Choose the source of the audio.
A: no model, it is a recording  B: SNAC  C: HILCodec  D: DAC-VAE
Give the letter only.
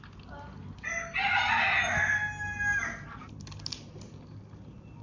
A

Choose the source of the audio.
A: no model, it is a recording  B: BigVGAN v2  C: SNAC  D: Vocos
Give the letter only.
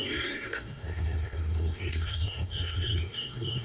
C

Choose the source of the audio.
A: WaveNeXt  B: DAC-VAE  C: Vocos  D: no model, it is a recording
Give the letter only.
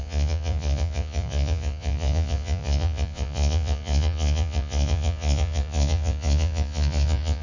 C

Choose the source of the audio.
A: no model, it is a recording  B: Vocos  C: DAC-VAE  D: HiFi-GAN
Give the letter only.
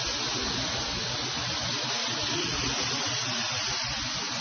A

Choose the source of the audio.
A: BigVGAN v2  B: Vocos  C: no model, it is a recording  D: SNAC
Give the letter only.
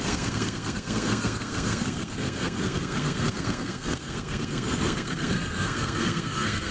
D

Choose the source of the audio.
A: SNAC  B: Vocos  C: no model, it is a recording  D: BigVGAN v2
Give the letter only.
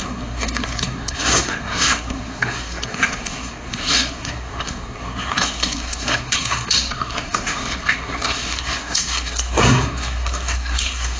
A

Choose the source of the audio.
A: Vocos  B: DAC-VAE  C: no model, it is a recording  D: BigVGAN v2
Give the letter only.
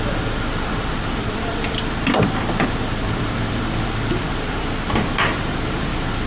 D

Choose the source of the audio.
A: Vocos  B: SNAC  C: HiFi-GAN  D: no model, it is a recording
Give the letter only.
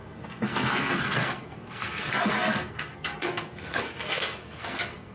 B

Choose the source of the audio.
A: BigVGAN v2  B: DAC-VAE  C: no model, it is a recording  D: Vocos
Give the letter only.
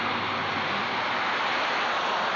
C